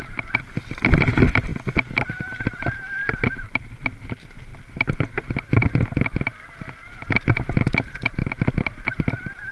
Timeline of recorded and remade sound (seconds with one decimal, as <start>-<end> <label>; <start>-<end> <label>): 0.0-3.0 recorded; 3.0-4.1 remade; 4.1-4.5 recorded; 4.5-7.7 remade; 7.7-8.2 recorded; 8.2-9.5 remade